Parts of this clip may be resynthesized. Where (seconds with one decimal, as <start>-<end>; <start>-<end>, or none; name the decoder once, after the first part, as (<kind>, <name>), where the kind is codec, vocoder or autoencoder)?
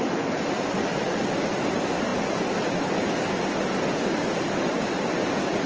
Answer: none